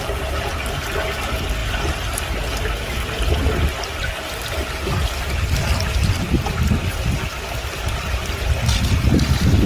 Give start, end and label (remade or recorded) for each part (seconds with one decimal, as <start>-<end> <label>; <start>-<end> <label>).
0.0-9.7 recorded